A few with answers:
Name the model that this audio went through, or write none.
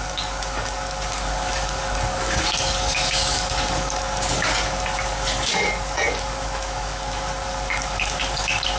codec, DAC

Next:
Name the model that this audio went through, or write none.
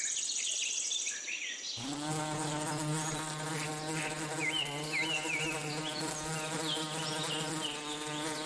none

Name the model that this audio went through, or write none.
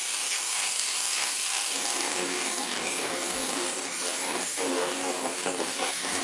codec, DAC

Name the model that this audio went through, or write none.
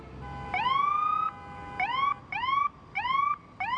none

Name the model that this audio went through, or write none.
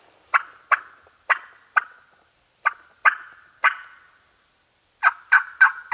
none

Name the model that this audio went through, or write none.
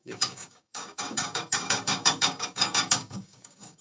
codec, DAC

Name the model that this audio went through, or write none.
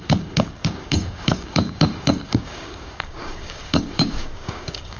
codec, DAC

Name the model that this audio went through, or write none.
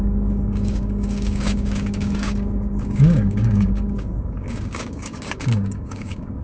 codec, DAC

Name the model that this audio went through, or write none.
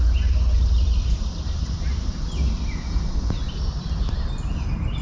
none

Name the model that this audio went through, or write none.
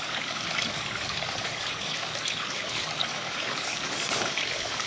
codec, DAC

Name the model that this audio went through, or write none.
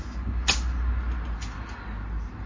none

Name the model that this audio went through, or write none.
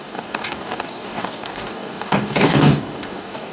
codec, DAC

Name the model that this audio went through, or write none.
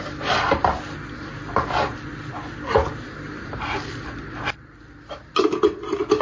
none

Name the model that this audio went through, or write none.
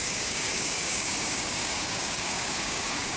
codec, DAC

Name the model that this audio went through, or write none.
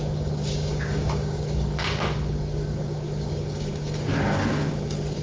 codec, DAC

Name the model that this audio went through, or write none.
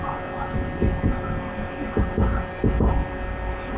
none